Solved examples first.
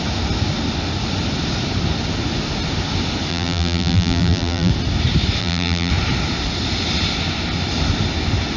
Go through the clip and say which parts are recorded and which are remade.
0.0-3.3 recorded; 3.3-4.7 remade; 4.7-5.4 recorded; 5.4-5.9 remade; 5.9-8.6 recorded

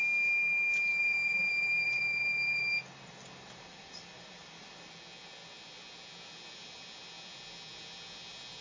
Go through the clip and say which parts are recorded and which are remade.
0.0-0.9 recorded; 0.9-4.9 remade; 4.9-8.6 recorded

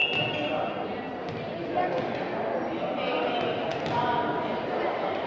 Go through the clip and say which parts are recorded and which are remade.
0.0-5.3 recorded

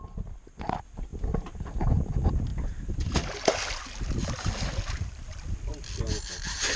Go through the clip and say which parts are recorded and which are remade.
0.0-6.8 recorded

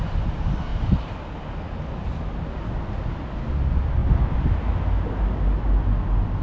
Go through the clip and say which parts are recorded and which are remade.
0.0-0.7 recorded; 0.7-2.2 remade; 2.2-4.0 recorded; 4.0-4.7 remade; 4.7-6.4 recorded

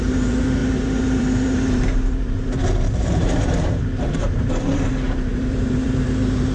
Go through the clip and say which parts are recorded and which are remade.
0.0-6.5 remade